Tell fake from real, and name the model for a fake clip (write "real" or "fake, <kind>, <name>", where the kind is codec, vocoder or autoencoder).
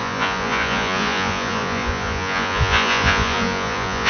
fake, vocoder, Vocos